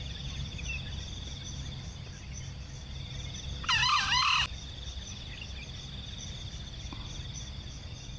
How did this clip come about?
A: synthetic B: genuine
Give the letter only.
B